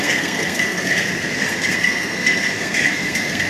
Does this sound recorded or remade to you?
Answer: remade